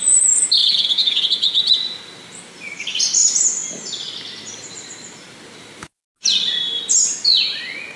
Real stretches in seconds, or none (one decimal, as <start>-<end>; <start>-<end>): 0.0-0.6; 1.6-8.0